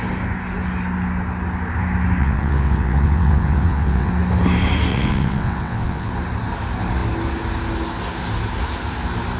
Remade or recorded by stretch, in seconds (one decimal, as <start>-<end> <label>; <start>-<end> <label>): 0.0-2.2 recorded; 2.2-4.1 remade; 4.1-4.9 recorded; 4.9-6.1 remade; 6.1-9.4 recorded